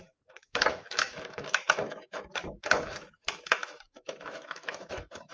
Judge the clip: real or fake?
fake